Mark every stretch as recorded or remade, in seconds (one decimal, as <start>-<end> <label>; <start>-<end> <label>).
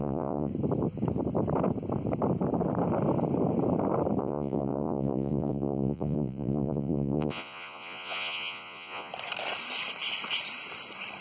0.0-0.5 remade; 0.5-4.2 recorded; 4.2-9.1 remade; 9.1-11.2 recorded